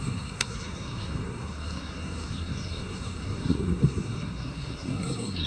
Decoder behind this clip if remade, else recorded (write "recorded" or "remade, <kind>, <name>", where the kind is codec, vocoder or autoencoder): remade, codec, SNAC